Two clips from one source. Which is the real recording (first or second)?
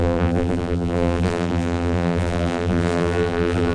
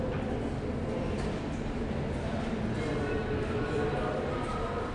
second